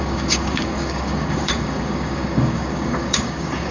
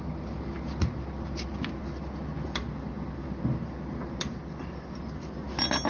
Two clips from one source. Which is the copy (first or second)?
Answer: first